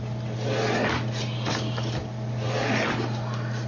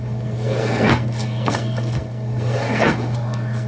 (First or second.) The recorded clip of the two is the first